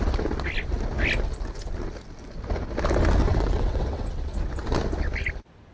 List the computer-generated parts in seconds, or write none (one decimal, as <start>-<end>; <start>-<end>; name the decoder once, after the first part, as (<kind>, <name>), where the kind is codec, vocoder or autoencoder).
3.2-4.1 (vocoder, WaveNeXt)